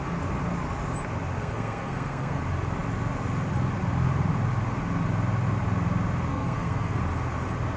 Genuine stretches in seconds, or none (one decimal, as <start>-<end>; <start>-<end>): 0.0-1.4; 2.4-6.3; 7.0-7.8